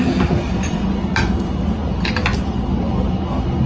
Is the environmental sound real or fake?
real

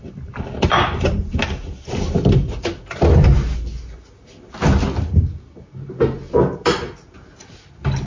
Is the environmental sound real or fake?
real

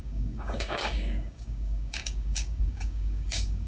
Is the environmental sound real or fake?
fake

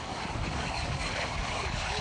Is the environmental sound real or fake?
fake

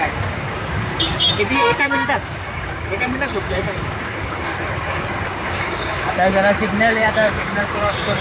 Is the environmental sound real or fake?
fake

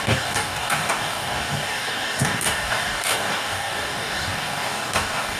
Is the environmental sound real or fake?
fake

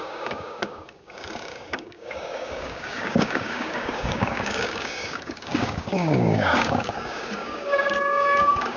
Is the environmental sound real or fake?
fake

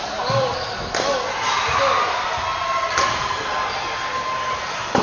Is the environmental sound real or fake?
real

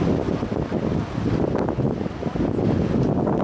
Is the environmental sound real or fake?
real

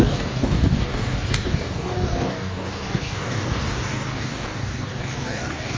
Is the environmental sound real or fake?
fake